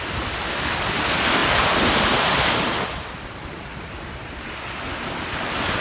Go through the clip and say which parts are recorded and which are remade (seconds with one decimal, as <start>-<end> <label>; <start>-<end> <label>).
0.0-5.8 recorded